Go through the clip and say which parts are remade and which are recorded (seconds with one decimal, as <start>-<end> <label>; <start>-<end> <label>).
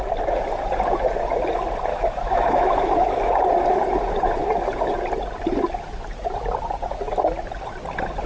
0.0-1.9 recorded; 1.9-3.3 remade; 3.3-8.3 recorded